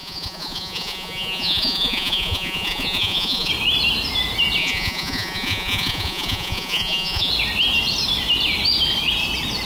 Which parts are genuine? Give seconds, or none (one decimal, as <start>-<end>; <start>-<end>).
3.5-4.6; 7.3-9.7

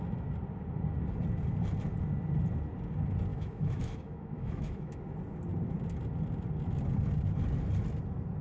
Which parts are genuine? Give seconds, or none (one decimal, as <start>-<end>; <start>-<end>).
0.0-3.3; 5.0-8.4

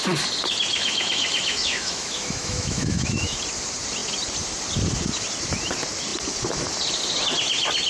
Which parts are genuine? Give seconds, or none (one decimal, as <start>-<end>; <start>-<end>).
0.0-0.7; 3.4-7.9

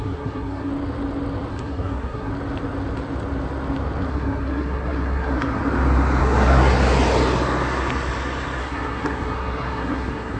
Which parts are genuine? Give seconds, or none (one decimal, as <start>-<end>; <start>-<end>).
0.7-1.5; 2.3-4.1; 5.6-6.2; 6.8-8.6

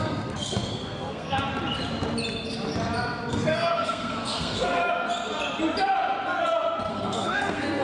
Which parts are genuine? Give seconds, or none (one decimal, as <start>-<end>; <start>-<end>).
1.5-3.3; 4.8-6.9

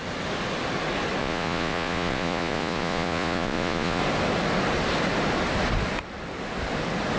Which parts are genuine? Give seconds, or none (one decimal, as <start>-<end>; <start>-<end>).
0.0-1.2; 4.0-7.2

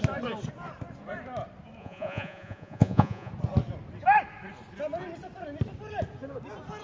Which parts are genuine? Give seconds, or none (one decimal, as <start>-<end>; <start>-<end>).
0.0-1.8; 3.3-6.8